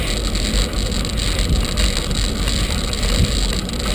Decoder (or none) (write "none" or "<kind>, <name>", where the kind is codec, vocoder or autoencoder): none